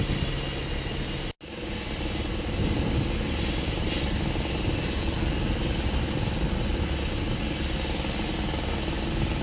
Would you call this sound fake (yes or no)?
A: no